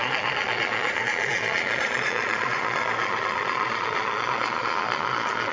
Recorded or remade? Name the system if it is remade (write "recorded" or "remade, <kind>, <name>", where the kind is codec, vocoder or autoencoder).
remade, vocoder, Vocos